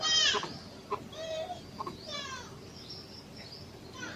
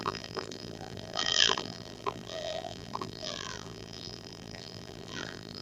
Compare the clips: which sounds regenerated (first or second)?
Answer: second